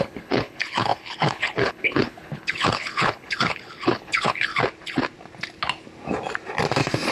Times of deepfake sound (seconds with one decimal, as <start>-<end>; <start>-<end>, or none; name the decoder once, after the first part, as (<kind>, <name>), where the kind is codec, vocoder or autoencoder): 0.0-4.5 (codec, HILCodec)